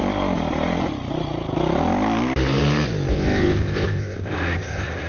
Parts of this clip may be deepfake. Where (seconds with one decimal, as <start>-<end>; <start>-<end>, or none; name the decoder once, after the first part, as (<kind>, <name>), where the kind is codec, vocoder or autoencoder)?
3.1-5.1 (codec, ZipCodec)